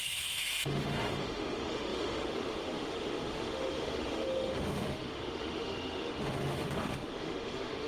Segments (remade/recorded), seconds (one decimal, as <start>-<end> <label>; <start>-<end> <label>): 0.0-7.9 remade